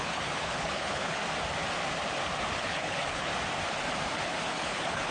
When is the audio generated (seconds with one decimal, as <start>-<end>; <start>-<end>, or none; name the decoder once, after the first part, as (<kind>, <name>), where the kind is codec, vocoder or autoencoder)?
0.0-1.2 (codec, HILCodec); 2.5-3.3; 4.4-5.1